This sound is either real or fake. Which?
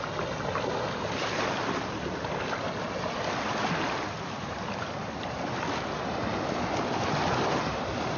real